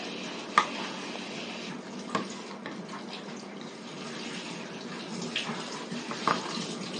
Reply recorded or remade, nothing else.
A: recorded